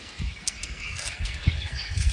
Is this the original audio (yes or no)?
no